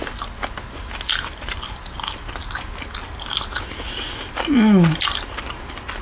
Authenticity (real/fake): real